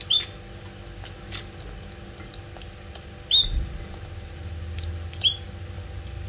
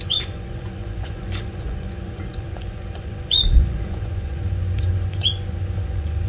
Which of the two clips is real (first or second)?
first